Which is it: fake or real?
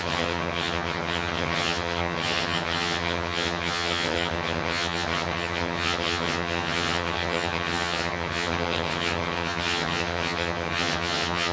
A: fake